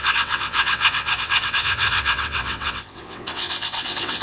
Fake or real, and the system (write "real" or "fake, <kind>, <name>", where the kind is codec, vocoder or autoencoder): fake, vocoder, WaveNeXt